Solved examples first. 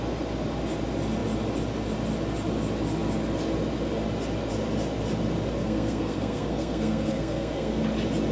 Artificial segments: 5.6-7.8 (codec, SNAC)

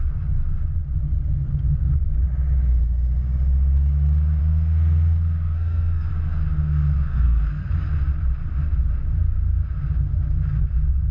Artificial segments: 4.4-6.1 (codec, SNAC); 6.6-7.7